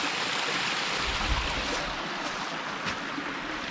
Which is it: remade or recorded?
recorded